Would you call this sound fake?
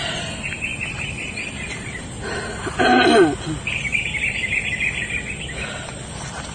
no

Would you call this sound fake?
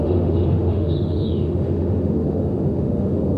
yes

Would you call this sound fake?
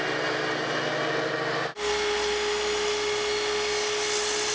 no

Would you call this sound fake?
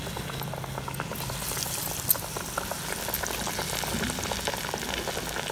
no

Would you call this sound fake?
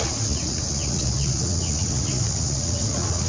yes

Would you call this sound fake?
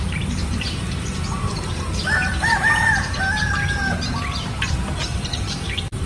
yes